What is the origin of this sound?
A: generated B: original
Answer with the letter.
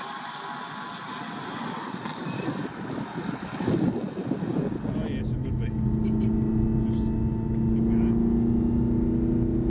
B